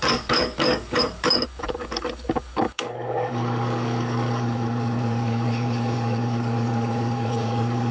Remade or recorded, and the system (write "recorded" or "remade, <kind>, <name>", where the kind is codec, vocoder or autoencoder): remade, codec, DAC